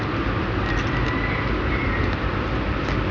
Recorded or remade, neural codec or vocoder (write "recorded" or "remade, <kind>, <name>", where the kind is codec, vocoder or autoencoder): recorded